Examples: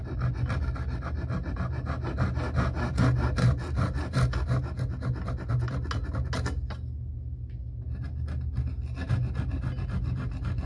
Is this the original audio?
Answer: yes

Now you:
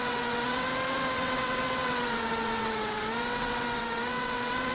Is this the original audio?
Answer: no